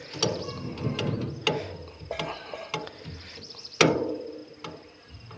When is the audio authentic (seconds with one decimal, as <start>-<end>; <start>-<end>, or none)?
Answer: 0.0-5.4